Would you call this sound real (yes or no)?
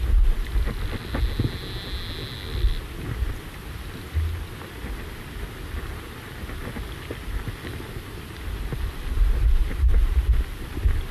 yes